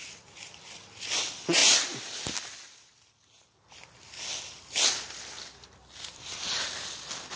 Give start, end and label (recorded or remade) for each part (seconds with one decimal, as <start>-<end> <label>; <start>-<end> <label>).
0.0-7.4 recorded